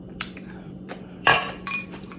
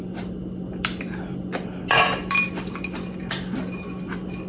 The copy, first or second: first